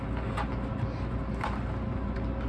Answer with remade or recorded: recorded